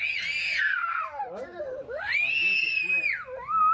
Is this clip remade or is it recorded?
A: recorded